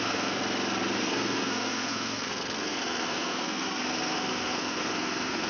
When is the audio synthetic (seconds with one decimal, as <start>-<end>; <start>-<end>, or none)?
0.0-0.4; 1.0-5.5